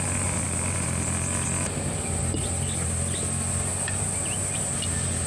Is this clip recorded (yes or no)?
yes